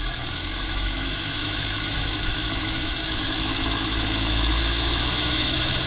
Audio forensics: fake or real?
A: fake